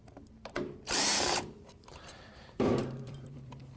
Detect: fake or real fake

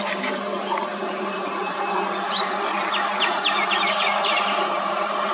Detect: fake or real real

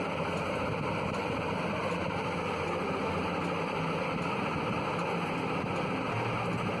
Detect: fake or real real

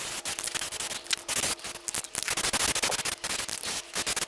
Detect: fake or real real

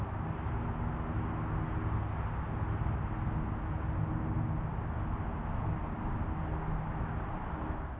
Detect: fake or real real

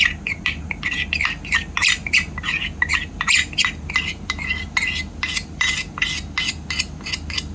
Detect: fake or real real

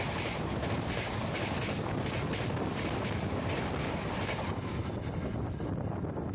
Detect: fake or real fake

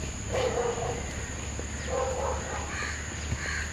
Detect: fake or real real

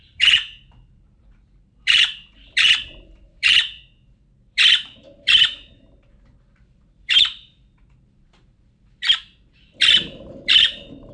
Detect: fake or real fake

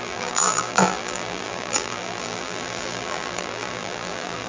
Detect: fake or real fake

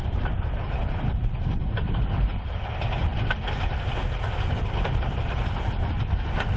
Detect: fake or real real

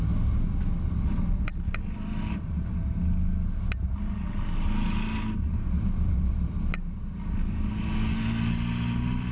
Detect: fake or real real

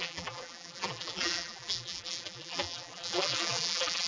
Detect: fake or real fake